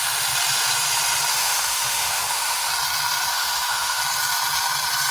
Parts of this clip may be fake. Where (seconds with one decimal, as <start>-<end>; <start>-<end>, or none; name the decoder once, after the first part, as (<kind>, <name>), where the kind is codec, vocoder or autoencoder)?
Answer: 1.3-2.7 (autoencoder, DAC-VAE); 3.3-4.0